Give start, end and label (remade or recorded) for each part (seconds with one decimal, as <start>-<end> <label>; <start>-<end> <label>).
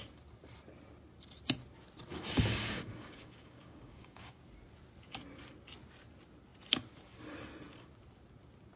0.0-2.1 recorded; 2.1-4.4 remade; 4.4-8.8 recorded